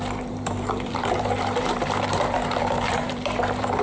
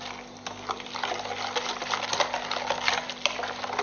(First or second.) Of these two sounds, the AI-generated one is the first